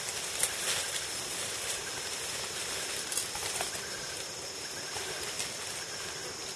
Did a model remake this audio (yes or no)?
no